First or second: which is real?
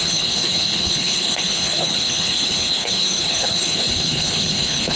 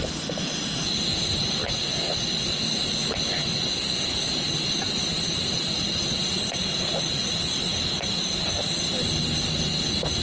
second